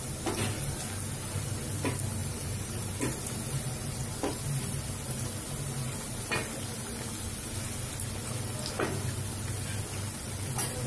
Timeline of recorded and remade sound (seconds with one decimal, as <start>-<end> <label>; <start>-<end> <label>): 0.0-2.2 recorded; 2.2-3.2 remade; 3.2-10.9 recorded